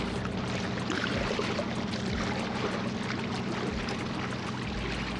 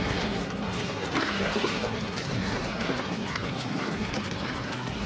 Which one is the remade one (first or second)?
second